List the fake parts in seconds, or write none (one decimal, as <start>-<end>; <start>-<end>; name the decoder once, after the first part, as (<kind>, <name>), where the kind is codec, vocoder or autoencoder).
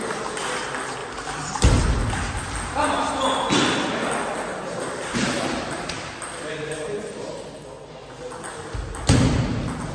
1.0-1.8 (vocoder, BigVGAN v2); 4.5-5.9